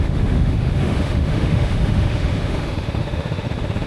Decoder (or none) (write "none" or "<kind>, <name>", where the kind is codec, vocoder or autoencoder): autoencoder, DAC-VAE